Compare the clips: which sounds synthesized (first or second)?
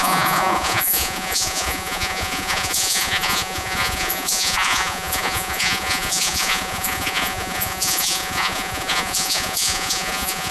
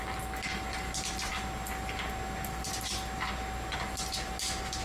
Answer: first